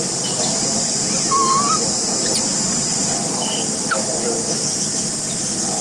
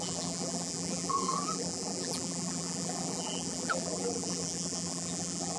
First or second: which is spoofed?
second